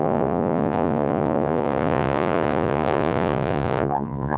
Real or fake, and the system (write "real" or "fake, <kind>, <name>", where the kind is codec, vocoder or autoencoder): fake, vocoder, Vocos